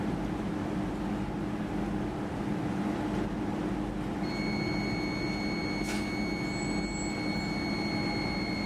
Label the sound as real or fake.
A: real